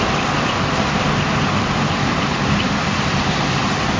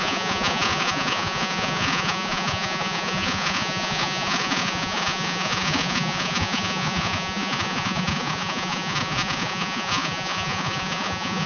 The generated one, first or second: second